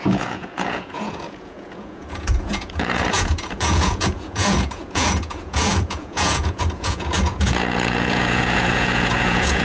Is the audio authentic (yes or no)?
no